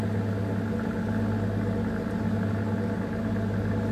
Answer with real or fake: real